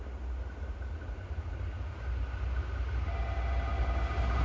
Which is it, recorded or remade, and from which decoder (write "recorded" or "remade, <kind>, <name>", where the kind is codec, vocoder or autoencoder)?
recorded